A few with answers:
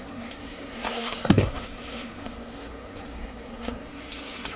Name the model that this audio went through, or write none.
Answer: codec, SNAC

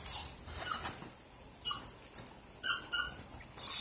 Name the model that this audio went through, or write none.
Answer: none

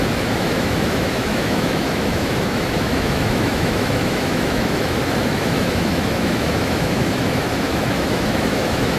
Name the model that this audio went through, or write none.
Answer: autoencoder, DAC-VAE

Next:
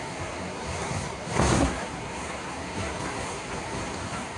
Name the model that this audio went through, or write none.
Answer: codec, SNAC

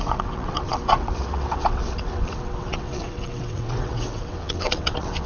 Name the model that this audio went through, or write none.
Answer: vocoder, WaveNeXt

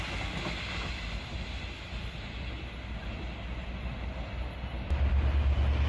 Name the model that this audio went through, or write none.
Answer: none